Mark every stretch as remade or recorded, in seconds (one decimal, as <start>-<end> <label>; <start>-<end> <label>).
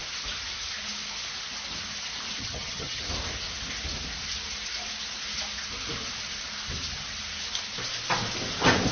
0.0-2.4 recorded; 2.4-3.0 remade; 3.0-8.9 recorded